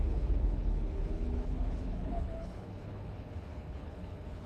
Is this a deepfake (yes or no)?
yes